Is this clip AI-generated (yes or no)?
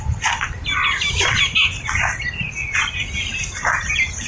no